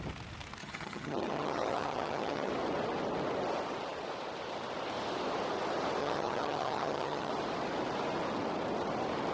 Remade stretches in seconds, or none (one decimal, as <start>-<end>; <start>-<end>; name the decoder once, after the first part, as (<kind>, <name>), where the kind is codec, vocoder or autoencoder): 0.6-2.5 (vocoder, HiFi-GAN); 6.0-7.3